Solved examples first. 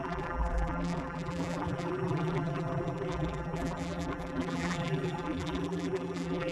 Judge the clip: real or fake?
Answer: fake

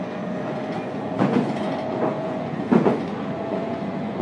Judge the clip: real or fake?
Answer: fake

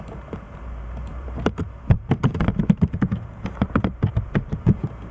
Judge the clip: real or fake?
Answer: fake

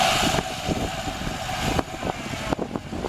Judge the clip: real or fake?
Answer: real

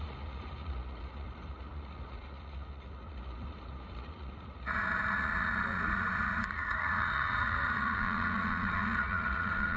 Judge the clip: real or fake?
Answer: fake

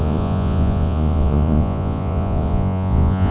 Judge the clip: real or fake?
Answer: fake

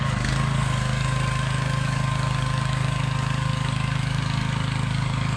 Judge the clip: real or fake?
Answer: fake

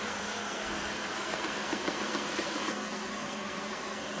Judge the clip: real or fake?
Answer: fake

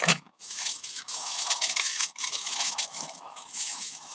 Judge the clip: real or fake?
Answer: fake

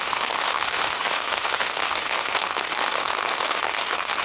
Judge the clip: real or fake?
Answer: fake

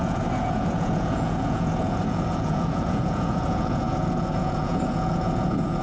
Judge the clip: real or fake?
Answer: fake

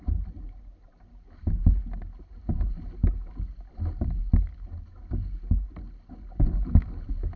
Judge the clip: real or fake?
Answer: real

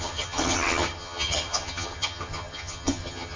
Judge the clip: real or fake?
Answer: fake